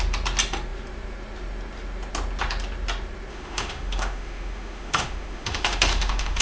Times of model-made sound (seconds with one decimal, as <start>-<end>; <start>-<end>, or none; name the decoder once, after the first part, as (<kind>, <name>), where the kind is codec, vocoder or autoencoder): 3.3-6.4 (autoencoder, DAC-VAE)